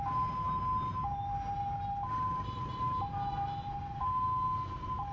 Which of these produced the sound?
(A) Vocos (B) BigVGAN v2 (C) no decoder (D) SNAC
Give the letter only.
C